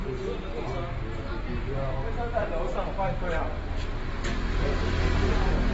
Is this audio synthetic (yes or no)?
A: no